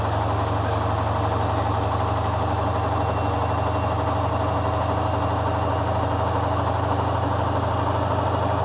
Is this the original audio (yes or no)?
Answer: yes